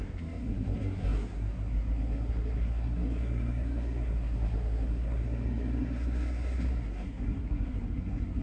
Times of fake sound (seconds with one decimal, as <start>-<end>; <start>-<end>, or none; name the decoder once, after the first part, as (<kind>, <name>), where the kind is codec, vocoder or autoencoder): 0.0-8.4 (codec, SNAC)